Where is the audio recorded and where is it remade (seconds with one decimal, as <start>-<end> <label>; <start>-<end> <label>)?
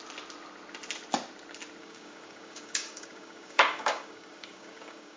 0.0-1.8 recorded; 1.8-5.2 remade